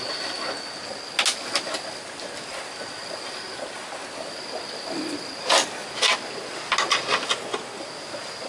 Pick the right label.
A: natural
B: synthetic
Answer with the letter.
A